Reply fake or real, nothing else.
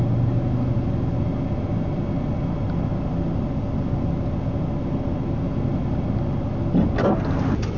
real